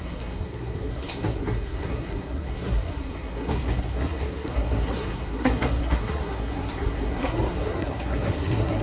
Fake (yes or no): yes